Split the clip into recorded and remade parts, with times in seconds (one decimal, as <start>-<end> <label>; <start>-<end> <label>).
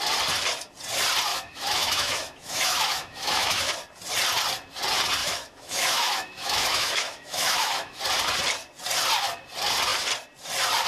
0.0-1.3 recorded; 1.3-3.7 remade; 3.7-5.2 recorded; 5.2-8.0 remade; 8.0-10.9 recorded